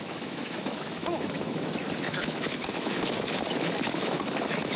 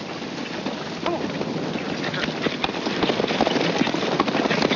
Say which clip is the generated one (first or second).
first